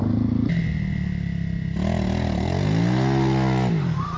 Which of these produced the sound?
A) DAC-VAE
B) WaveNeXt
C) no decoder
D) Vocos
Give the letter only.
C